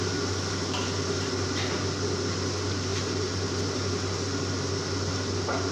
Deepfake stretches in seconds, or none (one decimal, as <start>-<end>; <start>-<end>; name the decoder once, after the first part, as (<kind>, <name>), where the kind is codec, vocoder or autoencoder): none